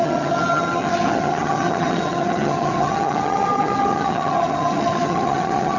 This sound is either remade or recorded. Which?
remade